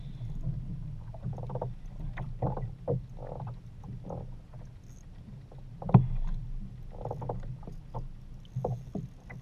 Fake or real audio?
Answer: real